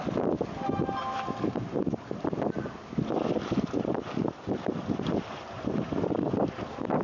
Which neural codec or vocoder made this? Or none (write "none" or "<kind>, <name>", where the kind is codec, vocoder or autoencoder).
none